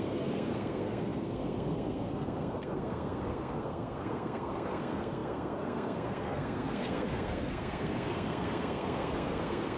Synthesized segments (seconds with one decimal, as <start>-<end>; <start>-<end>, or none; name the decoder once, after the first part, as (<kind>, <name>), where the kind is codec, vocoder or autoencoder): 0.0-9.8 (codec, SNAC)